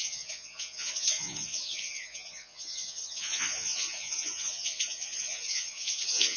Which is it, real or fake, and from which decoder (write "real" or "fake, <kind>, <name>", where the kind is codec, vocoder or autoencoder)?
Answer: fake, vocoder, Vocos